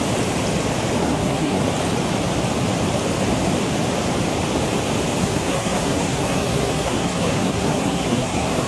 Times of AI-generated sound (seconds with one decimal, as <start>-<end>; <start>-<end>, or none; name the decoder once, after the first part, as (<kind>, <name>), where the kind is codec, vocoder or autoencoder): 1.0-1.6 (codec, SNAC); 5.2-8.7